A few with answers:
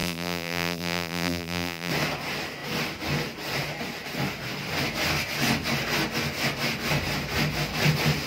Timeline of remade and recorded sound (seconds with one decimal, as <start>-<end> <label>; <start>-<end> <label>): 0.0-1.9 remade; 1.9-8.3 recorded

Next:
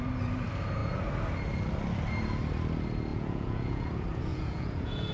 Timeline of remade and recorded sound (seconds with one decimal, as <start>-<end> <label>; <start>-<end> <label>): 0.0-3.1 recorded; 3.1-3.9 remade; 3.9-4.3 recorded; 4.3-5.1 remade

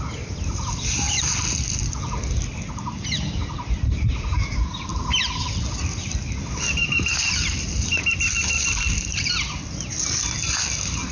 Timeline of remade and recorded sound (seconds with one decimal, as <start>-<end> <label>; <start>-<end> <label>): 0.0-11.1 recorded

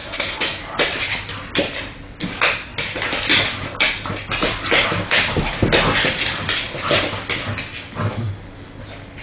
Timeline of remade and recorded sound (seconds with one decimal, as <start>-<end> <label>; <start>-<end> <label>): 0.0-0.6 remade; 0.6-9.2 recorded